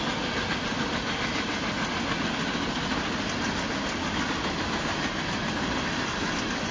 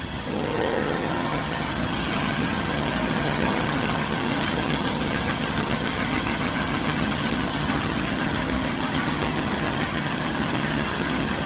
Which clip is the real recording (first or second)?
first